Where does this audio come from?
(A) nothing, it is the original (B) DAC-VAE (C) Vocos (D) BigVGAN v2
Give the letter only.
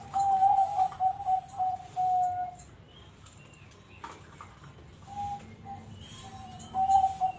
A